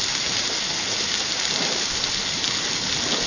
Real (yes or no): yes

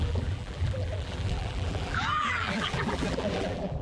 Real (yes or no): no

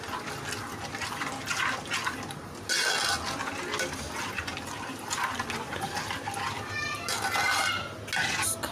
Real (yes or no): yes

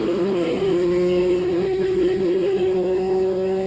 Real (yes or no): no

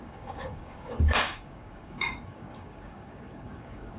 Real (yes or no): no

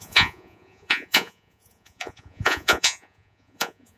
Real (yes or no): no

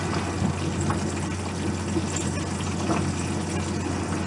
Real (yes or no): yes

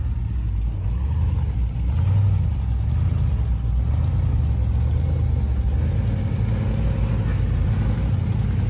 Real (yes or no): yes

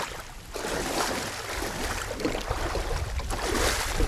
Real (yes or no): yes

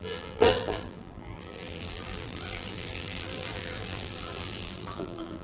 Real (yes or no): no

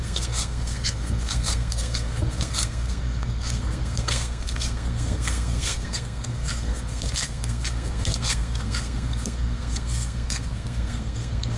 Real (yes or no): no